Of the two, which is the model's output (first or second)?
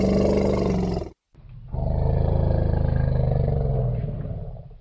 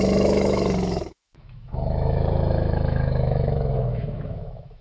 second